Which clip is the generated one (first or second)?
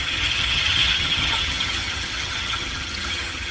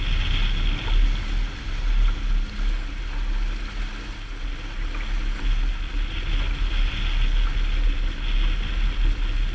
first